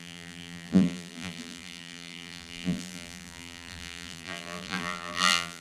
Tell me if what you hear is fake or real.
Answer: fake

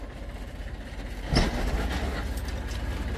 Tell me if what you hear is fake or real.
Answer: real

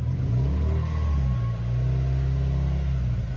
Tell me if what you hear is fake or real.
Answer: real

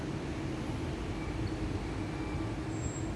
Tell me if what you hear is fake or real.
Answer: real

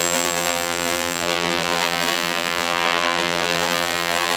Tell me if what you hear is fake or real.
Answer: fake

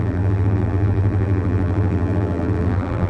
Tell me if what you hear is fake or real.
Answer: fake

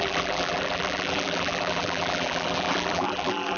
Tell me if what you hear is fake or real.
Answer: fake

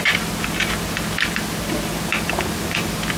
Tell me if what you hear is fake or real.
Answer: fake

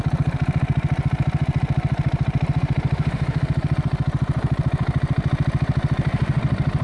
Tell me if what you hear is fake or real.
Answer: fake